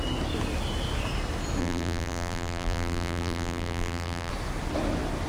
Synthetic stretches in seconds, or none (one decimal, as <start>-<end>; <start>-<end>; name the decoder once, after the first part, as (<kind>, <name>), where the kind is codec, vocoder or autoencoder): 1.6-4.3 (vocoder, BigVGAN v2)